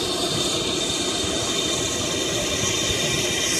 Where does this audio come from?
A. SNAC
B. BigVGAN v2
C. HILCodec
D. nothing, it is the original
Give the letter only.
D